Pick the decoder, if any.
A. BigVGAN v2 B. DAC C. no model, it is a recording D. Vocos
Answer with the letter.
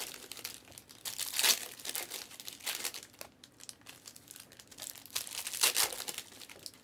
C